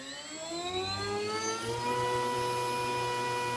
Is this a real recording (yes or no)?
yes